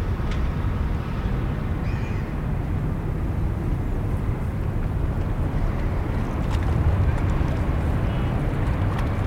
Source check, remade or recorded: recorded